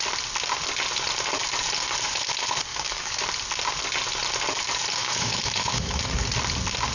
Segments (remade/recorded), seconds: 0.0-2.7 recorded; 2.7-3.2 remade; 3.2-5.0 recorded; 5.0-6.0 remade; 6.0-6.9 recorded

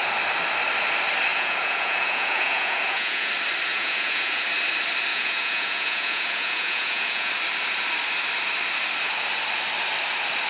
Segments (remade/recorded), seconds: 0.0-1.3 recorded; 1.3-3.3 remade; 3.3-3.7 recorded; 3.7-4.4 remade; 4.4-5.1 recorded; 5.1-7.3 remade; 7.3-10.5 recorded